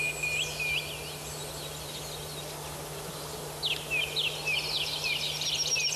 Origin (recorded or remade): recorded